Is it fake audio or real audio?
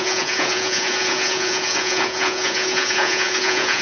fake